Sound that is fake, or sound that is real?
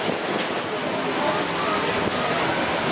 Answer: real